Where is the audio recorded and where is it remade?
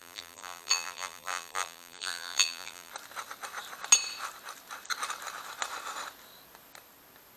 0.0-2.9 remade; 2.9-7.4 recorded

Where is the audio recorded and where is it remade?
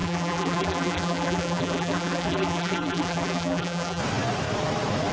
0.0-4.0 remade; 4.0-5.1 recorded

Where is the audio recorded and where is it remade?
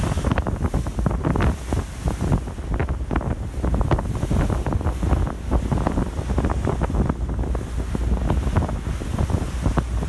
0.0-10.1 recorded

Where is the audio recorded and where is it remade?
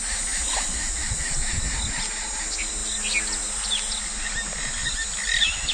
0.0-5.7 recorded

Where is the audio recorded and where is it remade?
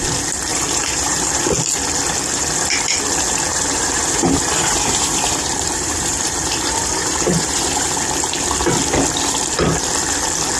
0.0-0.5 recorded; 0.5-1.5 remade; 1.5-3.5 recorded; 3.5-7.9 remade; 7.9-10.6 recorded